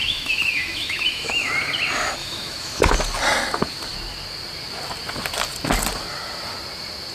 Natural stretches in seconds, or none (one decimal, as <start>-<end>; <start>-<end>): 1.5-2.2; 2.9-7.1